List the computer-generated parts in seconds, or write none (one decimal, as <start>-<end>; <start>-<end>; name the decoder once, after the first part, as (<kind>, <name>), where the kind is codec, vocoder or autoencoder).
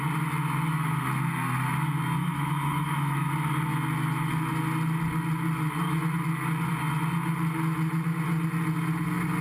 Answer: 2.2-3.3 (autoencoder, DAC-VAE)